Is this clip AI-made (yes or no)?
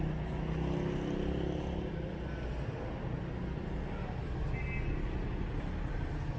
no